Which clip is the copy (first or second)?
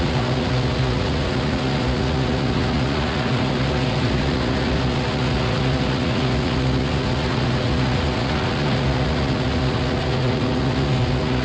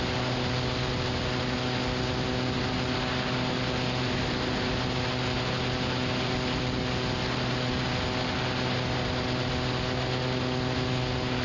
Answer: first